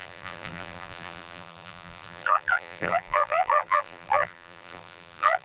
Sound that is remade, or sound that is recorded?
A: remade